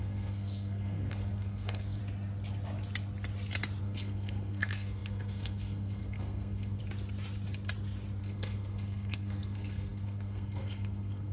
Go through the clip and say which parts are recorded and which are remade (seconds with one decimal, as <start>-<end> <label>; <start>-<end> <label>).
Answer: 0.0-2.0 remade; 2.0-3.8 recorded; 3.8-6.8 remade; 6.8-8.2 recorded; 8.2-11.3 remade